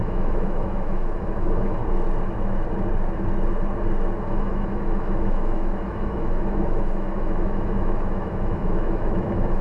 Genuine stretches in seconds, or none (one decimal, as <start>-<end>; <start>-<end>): 1.8-4.2